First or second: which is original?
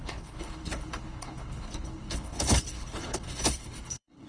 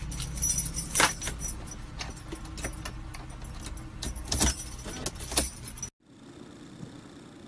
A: second